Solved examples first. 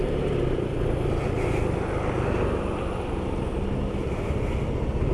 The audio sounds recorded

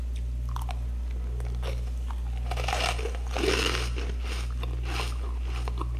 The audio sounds recorded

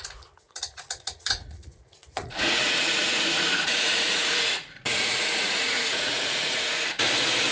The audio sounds remade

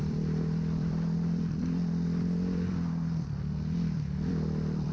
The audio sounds remade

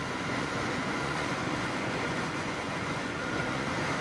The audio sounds remade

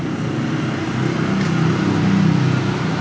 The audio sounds recorded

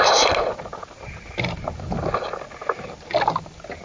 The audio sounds recorded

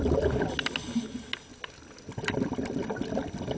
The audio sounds recorded